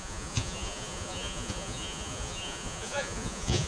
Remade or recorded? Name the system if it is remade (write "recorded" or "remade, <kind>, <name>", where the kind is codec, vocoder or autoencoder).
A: remade, vocoder, Vocos